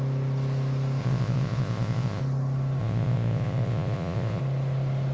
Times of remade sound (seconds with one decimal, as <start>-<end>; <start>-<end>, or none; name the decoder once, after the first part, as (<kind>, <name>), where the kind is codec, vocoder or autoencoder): 1.0-2.2 (vocoder, Vocos); 2.8-4.4